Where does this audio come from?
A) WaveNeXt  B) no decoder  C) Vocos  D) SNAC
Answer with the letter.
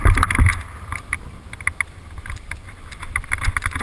B